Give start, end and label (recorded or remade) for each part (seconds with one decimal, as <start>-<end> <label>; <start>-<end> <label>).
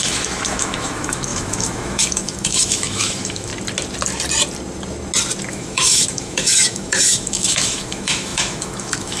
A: 0.0-3.5 remade; 3.5-5.5 recorded; 5.5-9.2 remade